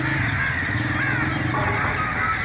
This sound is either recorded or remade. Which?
recorded